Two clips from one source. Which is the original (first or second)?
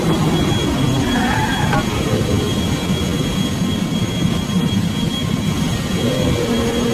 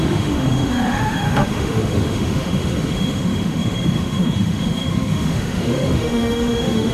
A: first